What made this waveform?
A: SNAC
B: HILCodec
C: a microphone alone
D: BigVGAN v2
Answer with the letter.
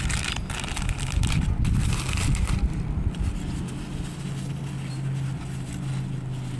C